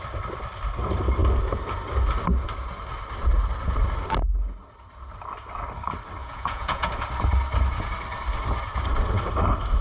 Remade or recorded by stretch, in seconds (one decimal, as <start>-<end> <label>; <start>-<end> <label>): 0.0-6.2 recorded; 6.2-6.9 remade; 6.9-9.8 recorded